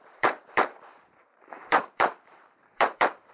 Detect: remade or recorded remade